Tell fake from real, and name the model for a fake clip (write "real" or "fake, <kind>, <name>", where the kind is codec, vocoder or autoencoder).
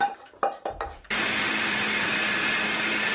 fake, vocoder, BigVGAN v2